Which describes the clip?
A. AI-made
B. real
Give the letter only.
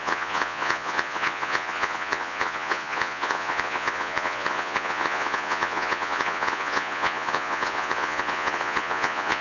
A